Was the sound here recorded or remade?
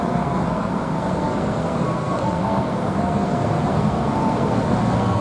remade